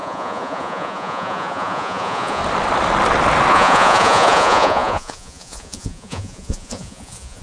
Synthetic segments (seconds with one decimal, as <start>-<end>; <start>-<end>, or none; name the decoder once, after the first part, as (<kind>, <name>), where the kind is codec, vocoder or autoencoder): 0.0-2.4 (vocoder, Vocos); 3.5-7.4